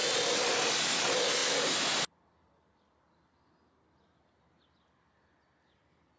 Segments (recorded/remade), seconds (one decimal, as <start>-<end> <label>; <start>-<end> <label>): 0.0-6.2 recorded